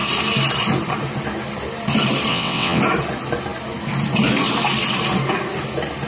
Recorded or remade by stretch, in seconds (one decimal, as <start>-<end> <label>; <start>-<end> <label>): 0.0-2.3 recorded; 2.3-2.8 remade; 2.8-6.1 recorded